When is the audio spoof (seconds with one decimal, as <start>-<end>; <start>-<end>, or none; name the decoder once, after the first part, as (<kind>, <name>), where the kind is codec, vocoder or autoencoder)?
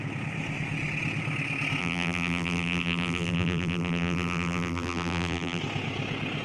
1.8-5.6 (vocoder, BigVGAN v2)